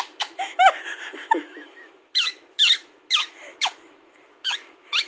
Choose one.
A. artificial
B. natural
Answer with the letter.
A